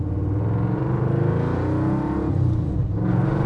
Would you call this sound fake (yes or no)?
no